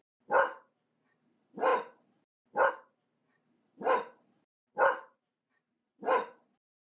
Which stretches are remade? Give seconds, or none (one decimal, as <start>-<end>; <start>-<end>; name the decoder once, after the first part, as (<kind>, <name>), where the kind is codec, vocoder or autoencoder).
none

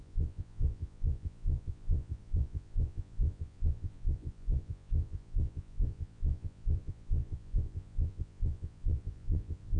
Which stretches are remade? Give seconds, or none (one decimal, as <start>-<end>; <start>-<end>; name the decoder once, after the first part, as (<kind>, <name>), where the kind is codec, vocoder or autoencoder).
0.0-9.8 (vocoder, Vocos)

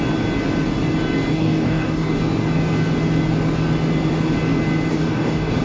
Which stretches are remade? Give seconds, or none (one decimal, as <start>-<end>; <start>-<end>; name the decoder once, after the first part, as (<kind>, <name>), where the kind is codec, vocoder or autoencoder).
1.3-2.2 (codec, DAC); 4.9-5.6

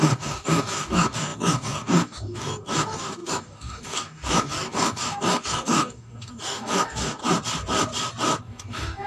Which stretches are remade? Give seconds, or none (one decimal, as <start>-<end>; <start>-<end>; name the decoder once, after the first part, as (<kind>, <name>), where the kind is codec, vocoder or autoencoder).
0.0-7.2 (codec, DAC); 8.4-9.1

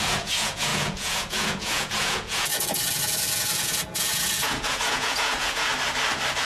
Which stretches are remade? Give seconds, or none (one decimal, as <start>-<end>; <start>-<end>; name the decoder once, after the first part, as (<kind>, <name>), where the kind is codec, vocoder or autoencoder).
0.0-5.7 (vocoder, Vocos)

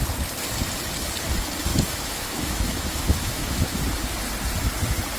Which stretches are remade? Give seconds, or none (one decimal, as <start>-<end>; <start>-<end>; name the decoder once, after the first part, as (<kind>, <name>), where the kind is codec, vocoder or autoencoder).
1.7-3.8 (autoencoder, DAC-VAE)